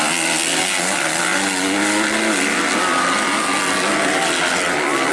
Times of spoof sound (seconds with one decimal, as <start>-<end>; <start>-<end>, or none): none